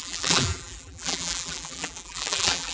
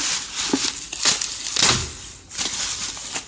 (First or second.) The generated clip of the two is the first